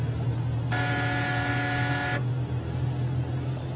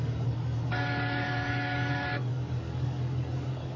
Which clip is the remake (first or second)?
second